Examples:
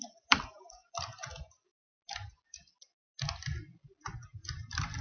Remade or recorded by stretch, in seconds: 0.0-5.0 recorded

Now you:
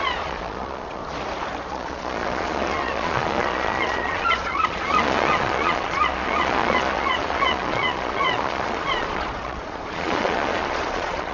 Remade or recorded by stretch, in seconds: 0.0-1.0 remade; 1.0-1.7 recorded; 1.7-11.3 remade

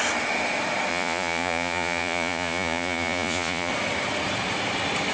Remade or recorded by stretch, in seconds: 0.0-0.9 recorded; 0.9-3.7 remade; 3.7-5.1 recorded

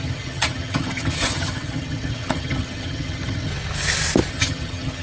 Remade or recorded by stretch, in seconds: 0.0-3.5 remade; 3.5-4.3 recorded; 4.3-5.0 remade

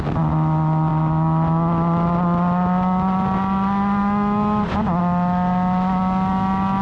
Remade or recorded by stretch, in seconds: 0.0-6.8 recorded

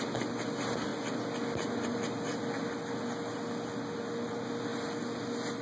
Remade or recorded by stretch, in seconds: 0.0-5.6 recorded

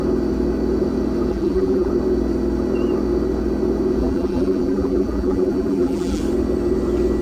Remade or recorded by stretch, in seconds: 0.0-1.3 recorded; 1.3-1.9 remade; 1.9-4.0 recorded; 4.0-6.2 remade; 6.2-7.2 recorded

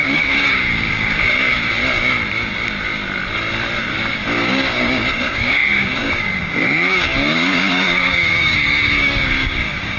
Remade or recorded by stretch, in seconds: 0.0-1.8 remade; 1.8-3.8 recorded; 3.8-10.0 remade